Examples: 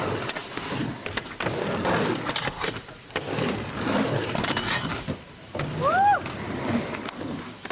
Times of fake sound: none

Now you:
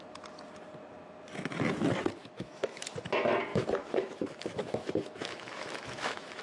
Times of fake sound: 2.2-2.8; 3.5-6.4

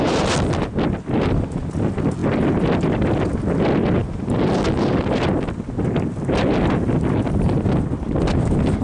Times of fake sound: none

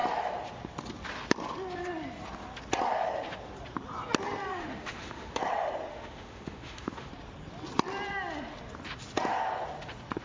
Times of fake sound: 4.5-5.4; 5.9-7.1

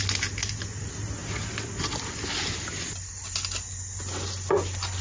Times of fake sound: none